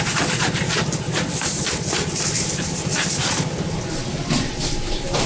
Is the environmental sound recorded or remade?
recorded